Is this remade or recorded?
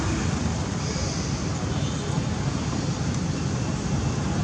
recorded